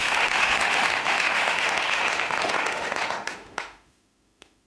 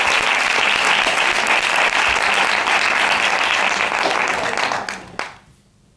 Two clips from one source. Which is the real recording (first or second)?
second